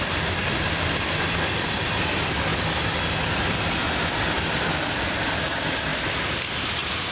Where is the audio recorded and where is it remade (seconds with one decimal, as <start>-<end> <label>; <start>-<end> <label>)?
0.0-1.8 remade; 1.8-2.5 recorded; 2.5-4.7 remade; 4.7-5.9 recorded; 5.9-6.5 remade; 6.5-7.1 recorded